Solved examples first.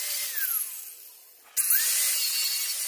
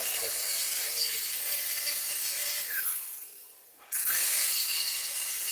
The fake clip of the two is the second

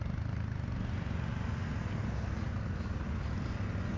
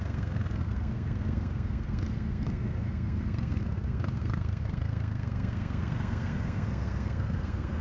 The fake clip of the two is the second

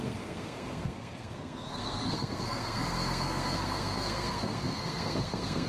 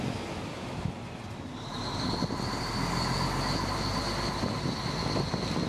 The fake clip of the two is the first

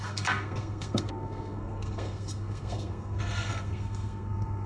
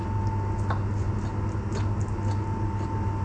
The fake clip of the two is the first